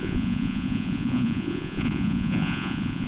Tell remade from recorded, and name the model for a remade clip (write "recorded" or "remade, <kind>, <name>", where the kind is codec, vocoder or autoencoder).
remade, vocoder, Vocos